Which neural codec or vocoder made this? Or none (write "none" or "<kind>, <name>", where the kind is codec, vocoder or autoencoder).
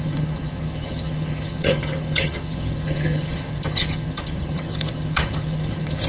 vocoder, HiFi-GAN